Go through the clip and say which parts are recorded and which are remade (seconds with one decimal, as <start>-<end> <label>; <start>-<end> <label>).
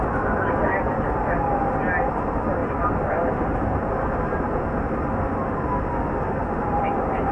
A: 0.0-2.6 recorded; 2.6-3.9 remade; 3.9-6.4 recorded; 6.4-7.3 remade